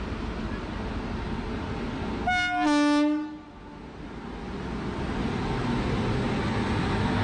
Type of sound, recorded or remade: recorded